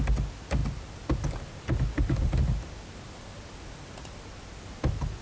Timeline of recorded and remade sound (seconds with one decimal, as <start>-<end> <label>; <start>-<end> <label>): 0.0-0.6 recorded; 0.6-1.6 remade; 1.6-5.2 recorded